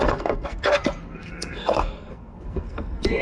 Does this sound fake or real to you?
fake